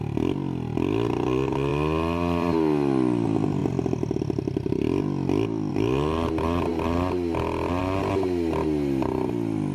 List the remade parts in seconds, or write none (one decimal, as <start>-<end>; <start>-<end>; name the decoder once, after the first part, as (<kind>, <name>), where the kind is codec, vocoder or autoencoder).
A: 1.7-2.5 (vocoder, BigVGAN v2)